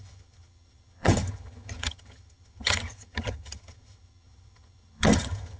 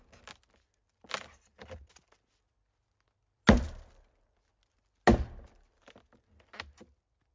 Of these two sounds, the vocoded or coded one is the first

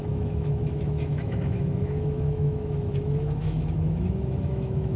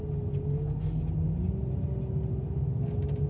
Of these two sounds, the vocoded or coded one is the first